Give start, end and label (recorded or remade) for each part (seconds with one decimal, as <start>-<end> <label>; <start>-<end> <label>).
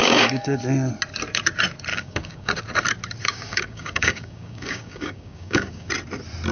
0.0-0.6 remade; 0.6-1.9 recorded; 1.9-2.6 remade; 2.6-3.2 recorded; 3.2-5.9 remade; 5.9-6.5 recorded